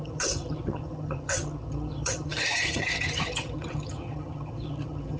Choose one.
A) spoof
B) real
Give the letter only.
A